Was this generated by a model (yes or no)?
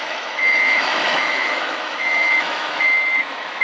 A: yes